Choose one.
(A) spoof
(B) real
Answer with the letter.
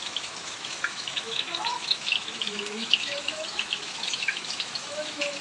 A